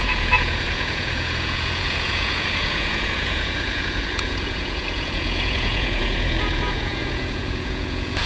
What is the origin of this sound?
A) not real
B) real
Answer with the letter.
A